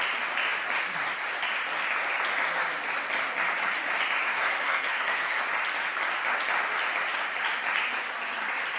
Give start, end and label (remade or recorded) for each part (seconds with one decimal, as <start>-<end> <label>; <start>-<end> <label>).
0.0-4.3 recorded; 4.3-5.4 remade; 5.4-8.8 recorded